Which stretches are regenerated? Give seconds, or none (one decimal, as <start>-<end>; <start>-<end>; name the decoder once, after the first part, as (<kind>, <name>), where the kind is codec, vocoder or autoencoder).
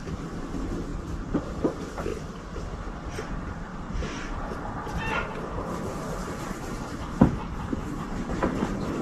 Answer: 0.0-2.1 (vocoder, BigVGAN v2); 3.3-9.0